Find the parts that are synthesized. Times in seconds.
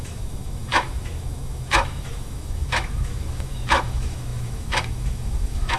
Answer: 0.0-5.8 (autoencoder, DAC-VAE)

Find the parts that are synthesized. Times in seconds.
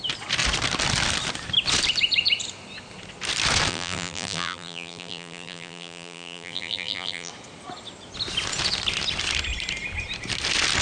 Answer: 3.7-7.3 (vocoder, BigVGAN v2)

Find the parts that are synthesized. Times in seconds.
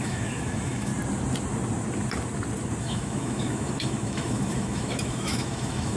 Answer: 0.0-0.9 (autoencoder, DAC-VAE); 2.8-6.0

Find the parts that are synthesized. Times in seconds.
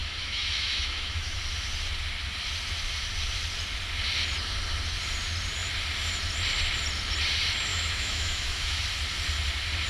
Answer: 0.0-1.4 (autoencoder, DAC-VAE); 7.7-8.8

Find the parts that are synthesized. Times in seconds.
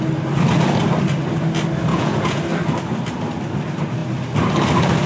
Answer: 1.9-2.4 (vocoder, Vocos)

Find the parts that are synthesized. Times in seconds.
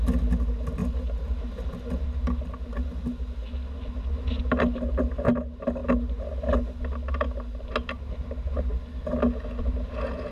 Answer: none